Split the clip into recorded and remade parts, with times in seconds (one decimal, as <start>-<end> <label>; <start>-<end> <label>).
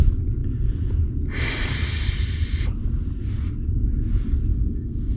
0.0-4.5 recorded; 4.5-5.2 remade